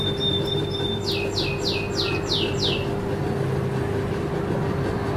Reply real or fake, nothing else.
real